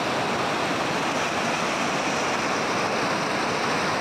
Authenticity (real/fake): real